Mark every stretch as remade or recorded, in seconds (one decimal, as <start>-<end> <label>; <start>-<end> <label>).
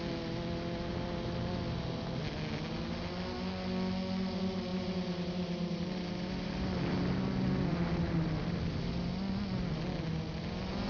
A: 0.0-4.7 recorded; 4.7-6.6 remade; 6.6-10.9 recorded